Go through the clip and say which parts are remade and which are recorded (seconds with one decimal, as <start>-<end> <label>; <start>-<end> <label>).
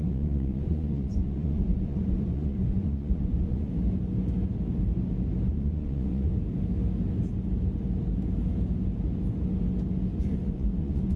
0.0-3.7 remade; 3.7-5.5 recorded; 5.5-6.3 remade; 6.3-10.2 recorded; 10.2-11.2 remade